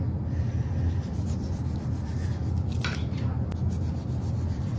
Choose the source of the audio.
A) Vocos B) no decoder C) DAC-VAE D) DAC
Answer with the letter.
B